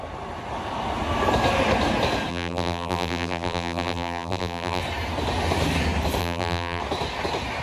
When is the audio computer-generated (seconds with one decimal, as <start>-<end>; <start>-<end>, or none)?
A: 2.3-4.8; 6.2-6.8